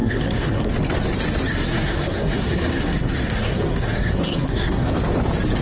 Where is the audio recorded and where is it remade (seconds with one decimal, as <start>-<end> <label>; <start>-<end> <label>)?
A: 0.0-0.7 remade; 0.7-1.5 recorded; 1.5-4.9 remade; 4.9-5.6 recorded